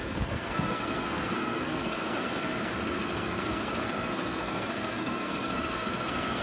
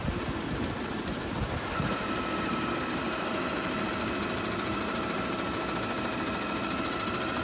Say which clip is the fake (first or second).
first